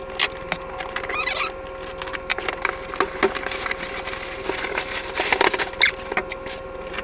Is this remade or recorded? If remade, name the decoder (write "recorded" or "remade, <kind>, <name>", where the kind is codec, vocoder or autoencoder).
recorded